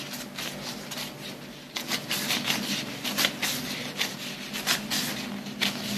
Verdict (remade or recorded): recorded